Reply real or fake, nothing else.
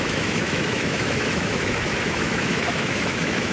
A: fake